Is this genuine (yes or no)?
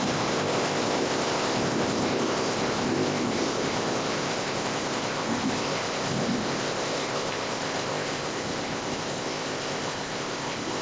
no